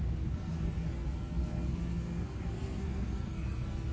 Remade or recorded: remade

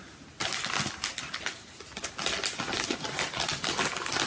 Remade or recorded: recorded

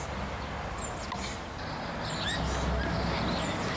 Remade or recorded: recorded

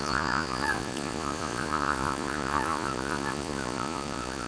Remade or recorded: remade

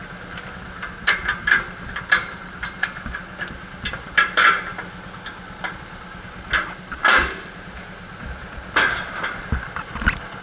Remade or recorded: recorded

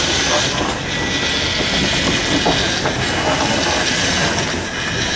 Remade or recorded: recorded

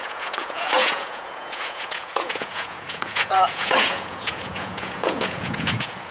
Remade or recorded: remade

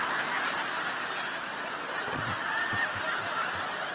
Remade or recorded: recorded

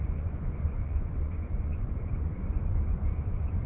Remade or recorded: remade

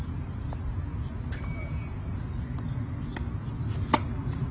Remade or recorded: recorded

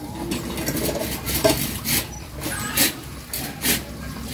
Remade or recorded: recorded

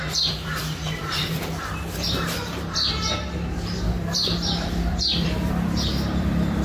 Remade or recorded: remade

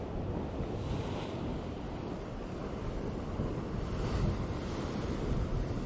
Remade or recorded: recorded